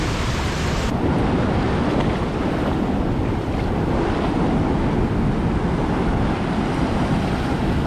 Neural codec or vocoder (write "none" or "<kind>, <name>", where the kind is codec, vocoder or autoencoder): none